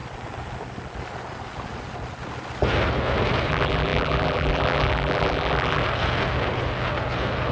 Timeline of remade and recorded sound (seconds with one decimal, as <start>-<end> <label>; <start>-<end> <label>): 0.0-3.5 recorded; 3.5-5.8 remade; 5.8-7.5 recorded